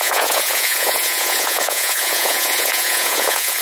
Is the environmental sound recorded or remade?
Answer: remade